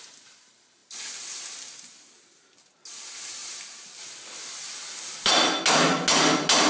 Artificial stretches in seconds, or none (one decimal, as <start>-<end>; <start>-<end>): none